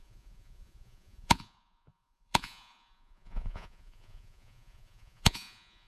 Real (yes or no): no